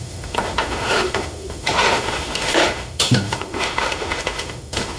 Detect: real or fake fake